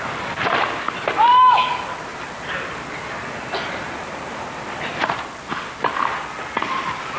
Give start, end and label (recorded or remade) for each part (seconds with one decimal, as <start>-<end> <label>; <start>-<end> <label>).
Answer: 0.0-2.1 recorded; 2.1-5.3 remade; 5.3-7.2 recorded